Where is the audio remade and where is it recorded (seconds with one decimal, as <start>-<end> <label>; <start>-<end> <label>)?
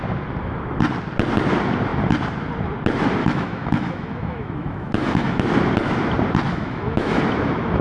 0.0-3.2 recorded; 3.2-5.4 remade; 5.4-6.5 recorded; 6.5-7.2 remade; 7.2-7.8 recorded